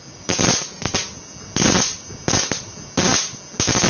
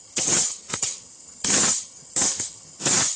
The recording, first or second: first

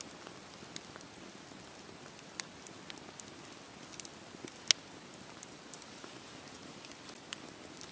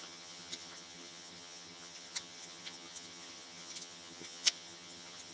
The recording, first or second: first